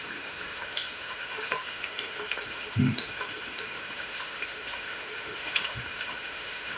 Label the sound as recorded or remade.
remade